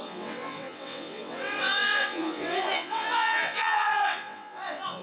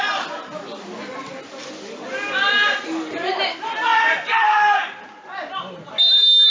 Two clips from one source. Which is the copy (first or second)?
first